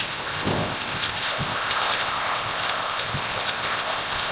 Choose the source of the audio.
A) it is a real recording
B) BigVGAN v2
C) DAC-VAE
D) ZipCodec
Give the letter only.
D